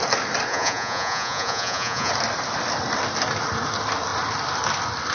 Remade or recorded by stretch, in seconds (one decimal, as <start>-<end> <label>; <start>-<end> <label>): 0.0-0.5 recorded; 0.5-2.1 remade; 2.1-5.1 recorded